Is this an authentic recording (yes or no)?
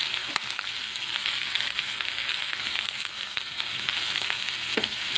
no